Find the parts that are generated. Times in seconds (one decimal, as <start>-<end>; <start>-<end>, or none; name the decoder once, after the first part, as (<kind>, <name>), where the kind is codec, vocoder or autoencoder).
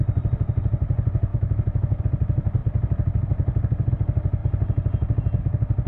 1.3-2.0 (autoencoder, DAC-VAE)